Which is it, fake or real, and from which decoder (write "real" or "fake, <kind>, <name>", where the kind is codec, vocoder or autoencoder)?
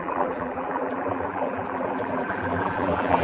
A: fake, vocoder, BigVGAN v2